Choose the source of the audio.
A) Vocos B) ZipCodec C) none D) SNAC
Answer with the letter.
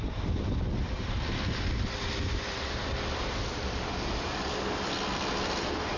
C